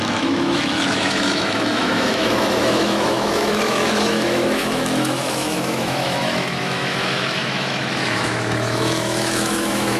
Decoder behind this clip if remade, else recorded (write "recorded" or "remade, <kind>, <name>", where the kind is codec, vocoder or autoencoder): remade, autoencoder, DAC-VAE